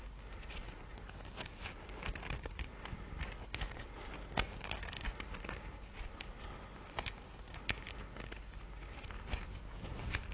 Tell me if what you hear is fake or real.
real